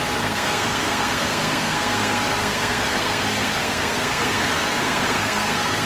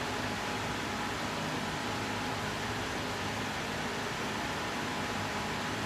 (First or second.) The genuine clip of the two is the second